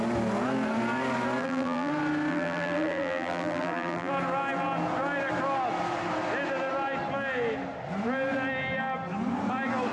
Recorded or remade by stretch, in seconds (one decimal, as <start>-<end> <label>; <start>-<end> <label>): 0.0-1.4 recorded; 1.4-1.9 remade; 1.9-2.3 recorded; 2.3-4.1 remade; 4.1-9.9 recorded